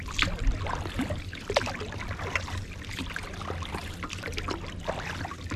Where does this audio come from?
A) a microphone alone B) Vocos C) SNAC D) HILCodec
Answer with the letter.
A